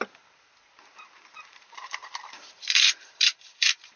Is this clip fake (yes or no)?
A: yes